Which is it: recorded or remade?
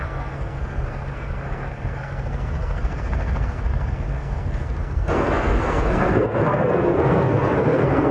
remade